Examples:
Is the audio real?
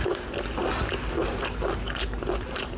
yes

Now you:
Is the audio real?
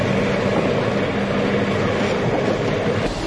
yes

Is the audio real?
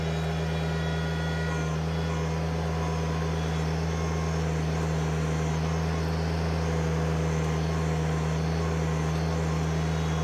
yes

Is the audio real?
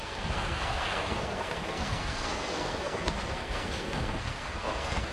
no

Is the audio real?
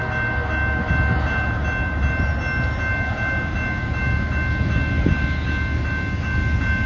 yes